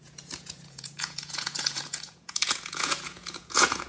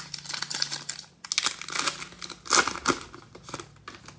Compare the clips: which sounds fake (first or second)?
first